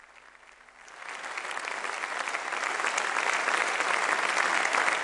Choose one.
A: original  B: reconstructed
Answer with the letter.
A